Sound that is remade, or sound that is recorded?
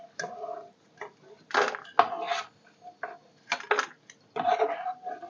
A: recorded